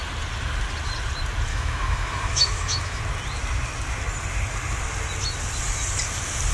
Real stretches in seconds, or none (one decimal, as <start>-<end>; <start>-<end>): 0.0-1.5; 3.0-6.5